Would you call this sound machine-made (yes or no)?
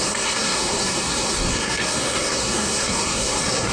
yes